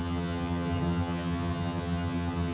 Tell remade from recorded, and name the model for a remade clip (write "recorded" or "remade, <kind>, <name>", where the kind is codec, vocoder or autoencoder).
remade, vocoder, HiFi-GAN